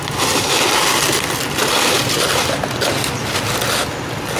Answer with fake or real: real